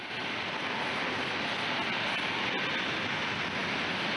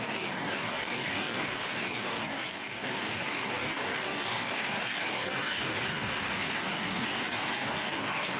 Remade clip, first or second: second